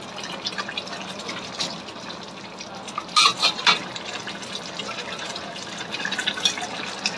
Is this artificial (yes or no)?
no